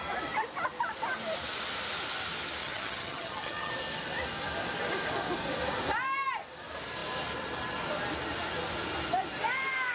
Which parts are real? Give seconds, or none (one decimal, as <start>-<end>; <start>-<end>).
0.0-2.6; 3.7-9.9